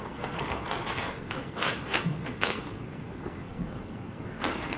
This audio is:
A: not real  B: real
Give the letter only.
A